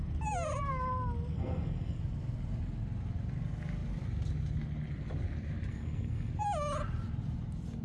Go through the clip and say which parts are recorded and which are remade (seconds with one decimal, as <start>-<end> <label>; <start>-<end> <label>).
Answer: 0.0-1.3 recorded; 1.3-2.0 remade; 2.0-5.7 recorded; 5.7-6.3 remade; 6.3-7.8 recorded